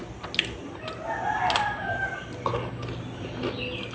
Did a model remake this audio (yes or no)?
no